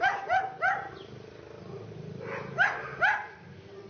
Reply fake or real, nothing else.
real